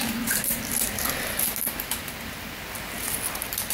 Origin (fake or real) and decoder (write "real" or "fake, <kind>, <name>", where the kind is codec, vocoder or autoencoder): real